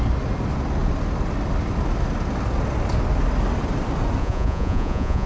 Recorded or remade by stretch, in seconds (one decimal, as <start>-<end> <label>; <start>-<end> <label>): 0.0-4.2 recorded; 4.2-5.3 remade